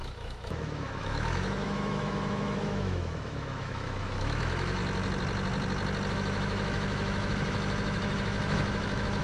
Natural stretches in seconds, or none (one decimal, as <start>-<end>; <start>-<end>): 4.8-6.1